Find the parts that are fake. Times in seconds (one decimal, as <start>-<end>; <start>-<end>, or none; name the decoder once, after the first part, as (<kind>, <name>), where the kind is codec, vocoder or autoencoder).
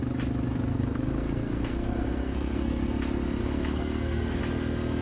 0.7-2.9 (codec, SNAC); 3.4-4.4